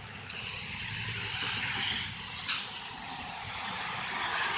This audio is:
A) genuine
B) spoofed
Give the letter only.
A